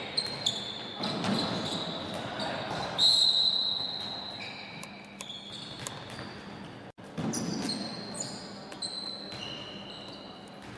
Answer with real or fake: real